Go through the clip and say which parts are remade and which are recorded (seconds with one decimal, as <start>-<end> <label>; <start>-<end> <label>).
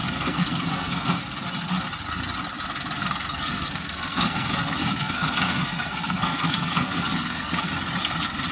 0.0-1.2 remade; 1.2-3.0 recorded; 3.0-7.7 remade; 7.7-8.5 recorded